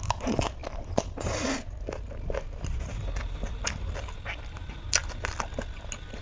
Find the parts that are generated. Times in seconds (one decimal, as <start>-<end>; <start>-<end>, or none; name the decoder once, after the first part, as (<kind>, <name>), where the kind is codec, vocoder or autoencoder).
none